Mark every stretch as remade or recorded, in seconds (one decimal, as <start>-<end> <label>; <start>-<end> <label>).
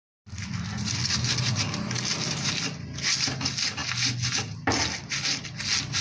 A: 0.0-6.0 recorded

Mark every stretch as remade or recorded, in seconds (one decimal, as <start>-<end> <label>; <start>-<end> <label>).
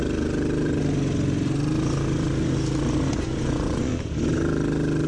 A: 0.0-3.1 recorded; 3.1-3.9 remade; 3.9-5.1 recorded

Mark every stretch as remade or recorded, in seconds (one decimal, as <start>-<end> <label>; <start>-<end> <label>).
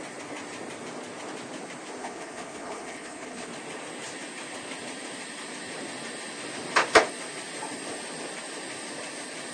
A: 0.0-2.0 recorded; 2.0-3.5 remade; 3.5-9.5 recorded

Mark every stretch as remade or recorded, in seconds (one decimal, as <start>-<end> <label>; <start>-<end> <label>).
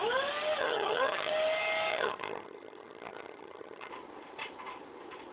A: 0.0-0.6 recorded; 0.6-1.3 remade; 1.3-1.9 recorded; 1.9-3.9 remade; 3.9-5.3 recorded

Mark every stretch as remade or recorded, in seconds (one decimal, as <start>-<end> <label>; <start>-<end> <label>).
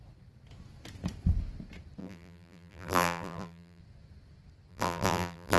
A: 0.0-2.0 recorded; 2.0-3.8 remade; 3.8-4.7 recorded; 4.7-5.6 remade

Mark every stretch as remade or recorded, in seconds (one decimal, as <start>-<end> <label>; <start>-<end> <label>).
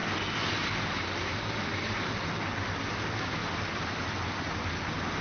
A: 0.0-5.2 recorded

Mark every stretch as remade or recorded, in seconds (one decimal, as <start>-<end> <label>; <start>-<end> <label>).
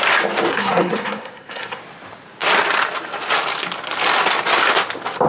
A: 0.0-0.5 recorded; 0.5-1.8 remade; 1.8-5.3 recorded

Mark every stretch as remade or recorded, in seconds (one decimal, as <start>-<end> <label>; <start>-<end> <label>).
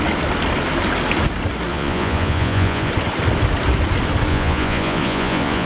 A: 0.0-1.7 recorded; 1.7-2.9 remade; 2.9-4.3 recorded; 4.3-5.7 remade